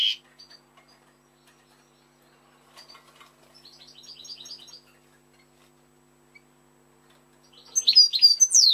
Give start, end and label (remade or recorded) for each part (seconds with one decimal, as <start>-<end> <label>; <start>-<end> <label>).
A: 0.0-8.7 recorded